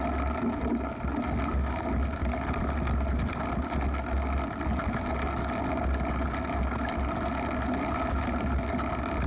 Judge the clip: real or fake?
real